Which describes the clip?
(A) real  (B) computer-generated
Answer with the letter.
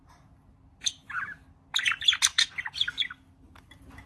A